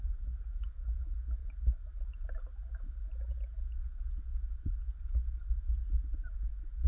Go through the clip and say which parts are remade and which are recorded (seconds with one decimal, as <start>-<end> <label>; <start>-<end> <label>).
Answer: 0.0-1.4 recorded; 1.4-2.0 remade; 2.0-6.9 recorded